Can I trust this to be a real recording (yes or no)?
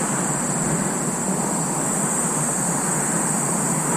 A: yes